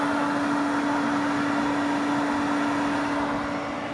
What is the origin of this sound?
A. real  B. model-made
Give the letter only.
A